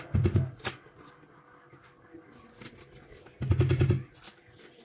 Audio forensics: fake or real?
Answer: real